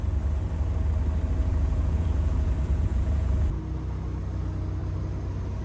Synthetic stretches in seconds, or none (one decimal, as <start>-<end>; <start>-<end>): 1.4-3.6